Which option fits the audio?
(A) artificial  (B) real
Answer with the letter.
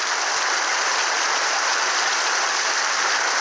B